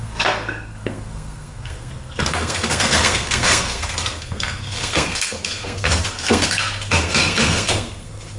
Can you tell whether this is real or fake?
fake